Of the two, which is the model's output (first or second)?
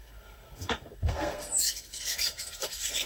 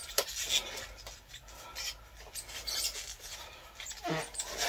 first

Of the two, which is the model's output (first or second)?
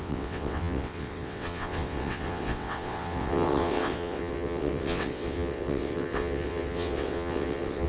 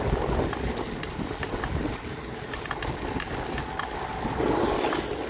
first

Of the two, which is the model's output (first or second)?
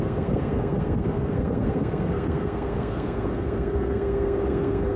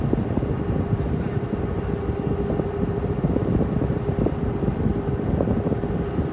first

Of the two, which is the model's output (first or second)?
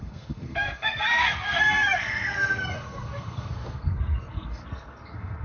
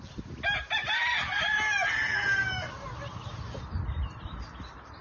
first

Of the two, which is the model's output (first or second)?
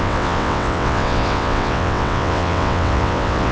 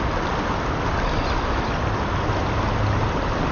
first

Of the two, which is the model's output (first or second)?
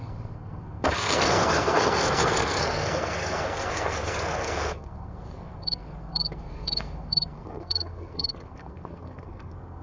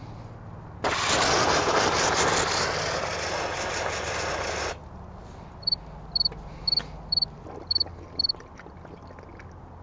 first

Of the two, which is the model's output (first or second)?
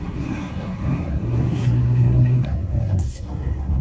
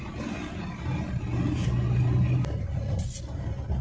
first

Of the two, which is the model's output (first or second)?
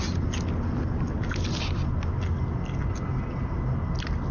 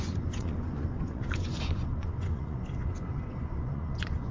second